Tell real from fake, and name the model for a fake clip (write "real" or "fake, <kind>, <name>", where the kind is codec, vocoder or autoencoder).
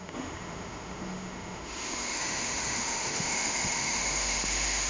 fake, autoencoder, DAC-VAE